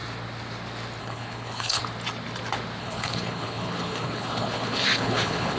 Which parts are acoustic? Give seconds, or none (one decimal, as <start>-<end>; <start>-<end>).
0.0-1.0; 1.8-2.8